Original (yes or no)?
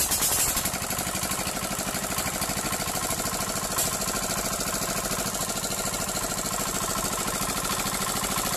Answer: yes